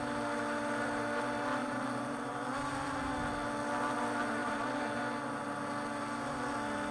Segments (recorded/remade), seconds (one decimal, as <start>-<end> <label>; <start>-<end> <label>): 0.0-1.6 recorded; 1.6-3.1 remade; 3.1-4.4 recorded; 4.4-5.0 remade; 5.0-6.9 recorded